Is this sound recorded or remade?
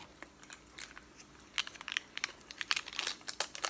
recorded